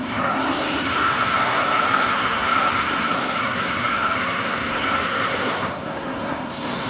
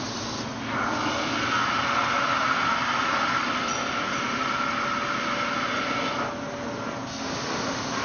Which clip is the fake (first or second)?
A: first